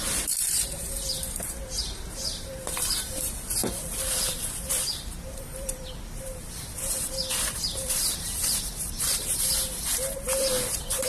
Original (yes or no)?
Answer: no